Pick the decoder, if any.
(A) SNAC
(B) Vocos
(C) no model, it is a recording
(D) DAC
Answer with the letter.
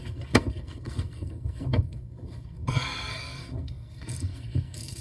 A